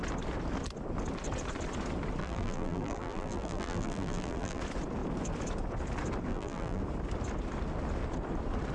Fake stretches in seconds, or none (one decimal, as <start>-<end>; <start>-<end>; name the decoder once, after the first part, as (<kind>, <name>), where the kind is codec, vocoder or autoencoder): 2.2-4.6 (vocoder, BigVGAN v2); 6.3-6.8